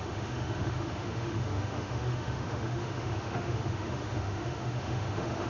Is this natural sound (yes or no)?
no